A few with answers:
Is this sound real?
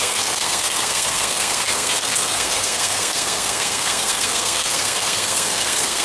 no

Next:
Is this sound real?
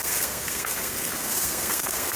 no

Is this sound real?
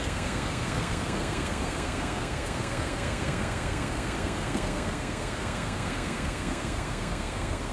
no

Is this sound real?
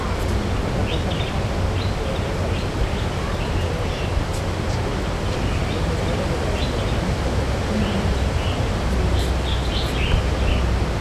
yes